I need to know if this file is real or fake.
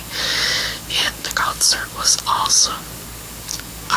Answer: fake